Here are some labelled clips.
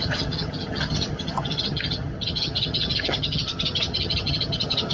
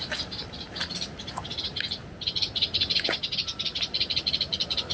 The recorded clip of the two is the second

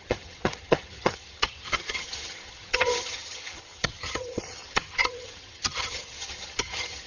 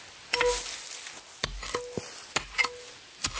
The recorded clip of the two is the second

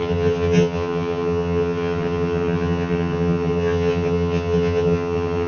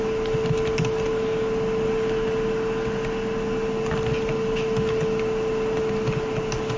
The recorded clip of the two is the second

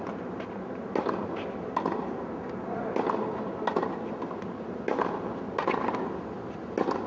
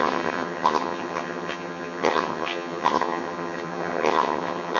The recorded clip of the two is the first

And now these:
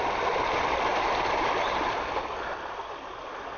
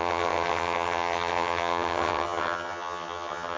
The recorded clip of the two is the first